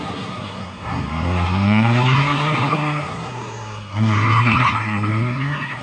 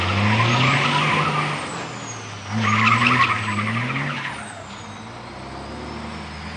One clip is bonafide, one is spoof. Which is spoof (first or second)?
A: first